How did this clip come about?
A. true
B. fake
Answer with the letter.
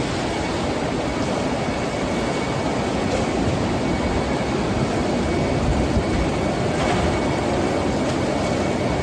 A